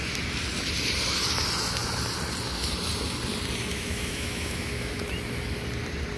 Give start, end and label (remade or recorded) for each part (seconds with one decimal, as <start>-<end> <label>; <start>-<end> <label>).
0.0-3.7 recorded; 3.7-5.0 remade; 5.0-6.2 recorded